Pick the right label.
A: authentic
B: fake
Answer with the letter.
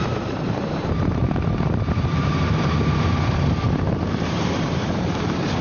B